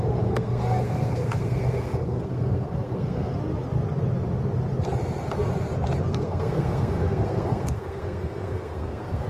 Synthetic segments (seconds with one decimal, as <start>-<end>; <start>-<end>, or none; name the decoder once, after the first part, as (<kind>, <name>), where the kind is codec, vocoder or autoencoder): 0.0-3.3 (codec, SNAC); 6.1-9.3